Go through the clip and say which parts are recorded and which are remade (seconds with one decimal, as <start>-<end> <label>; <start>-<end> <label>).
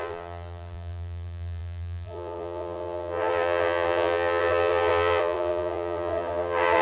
0.0-6.8 remade